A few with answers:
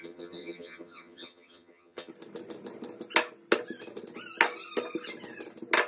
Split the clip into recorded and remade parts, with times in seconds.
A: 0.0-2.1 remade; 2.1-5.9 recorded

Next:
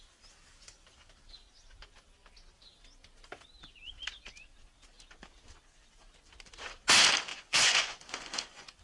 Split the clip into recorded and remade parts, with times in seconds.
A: 0.0-7.3 recorded; 7.3-8.8 remade

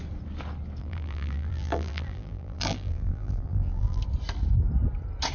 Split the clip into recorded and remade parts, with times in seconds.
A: 0.0-0.8 recorded; 0.8-4.0 remade; 4.0-5.3 recorded

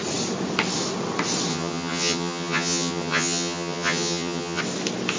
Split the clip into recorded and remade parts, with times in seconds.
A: 0.0-1.5 recorded; 1.5-4.6 remade; 4.6-5.2 recorded

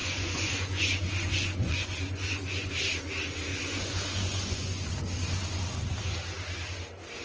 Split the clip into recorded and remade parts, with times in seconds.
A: 0.0-2.7 remade; 2.7-3.5 recorded; 3.5-4.9 remade; 4.9-7.2 recorded